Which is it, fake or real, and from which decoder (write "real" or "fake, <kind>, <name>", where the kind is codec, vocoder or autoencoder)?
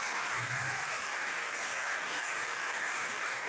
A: fake, codec, DAC